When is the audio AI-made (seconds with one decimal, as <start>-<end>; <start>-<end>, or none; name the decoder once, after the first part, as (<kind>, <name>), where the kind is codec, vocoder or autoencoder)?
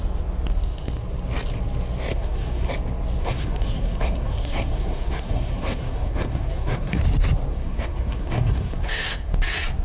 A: 2.1-2.7 (codec, SNAC); 3.2-7.0; 7.5-9.3